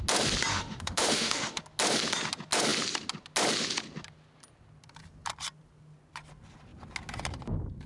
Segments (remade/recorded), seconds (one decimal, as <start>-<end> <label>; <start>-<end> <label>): 0.0-0.5 recorded; 0.5-1.6 remade; 1.6-7.9 recorded

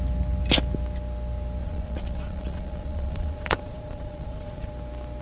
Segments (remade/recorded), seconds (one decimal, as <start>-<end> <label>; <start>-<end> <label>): 0.0-1.6 recorded; 1.6-4.7 remade; 4.7-5.2 recorded

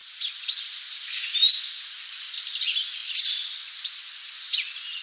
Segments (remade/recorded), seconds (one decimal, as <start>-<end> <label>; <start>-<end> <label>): 0.0-1.7 remade; 1.7-3.0 recorded; 3.0-3.6 remade; 3.6-5.0 recorded

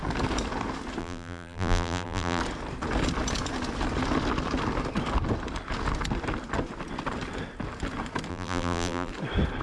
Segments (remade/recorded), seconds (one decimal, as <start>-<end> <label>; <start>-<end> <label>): 0.0-1.0 recorded; 1.0-2.4 remade; 2.4-8.3 recorded; 8.3-9.1 remade; 9.1-9.6 recorded

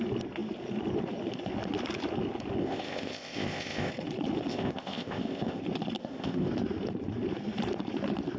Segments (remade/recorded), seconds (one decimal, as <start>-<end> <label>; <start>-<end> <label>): 0.0-2.6 recorded; 2.6-3.9 remade; 3.9-4.5 recorded; 4.5-5.6 remade; 5.6-6.0 recorded; 6.0-6.5 remade; 6.5-8.4 recorded

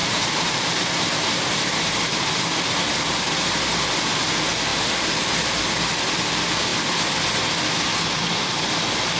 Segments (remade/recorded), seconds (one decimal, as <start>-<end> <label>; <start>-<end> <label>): 0.0-3.5 remade; 3.5-4.7 recorded; 4.7-5.6 remade; 5.6-9.2 recorded

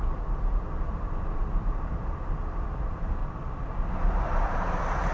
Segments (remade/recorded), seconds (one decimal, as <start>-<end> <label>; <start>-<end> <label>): 0.0-3.2 remade; 3.2-3.9 recorded; 3.9-5.1 remade